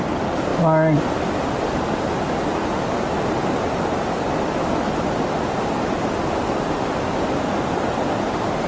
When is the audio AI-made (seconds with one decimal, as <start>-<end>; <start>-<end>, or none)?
none